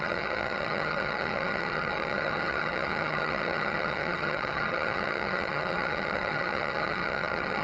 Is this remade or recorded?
remade